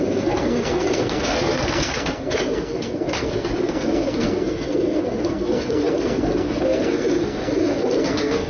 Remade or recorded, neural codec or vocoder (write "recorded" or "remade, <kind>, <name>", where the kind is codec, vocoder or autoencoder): remade, codec, SNAC